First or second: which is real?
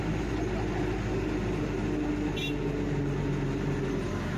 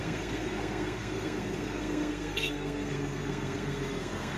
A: first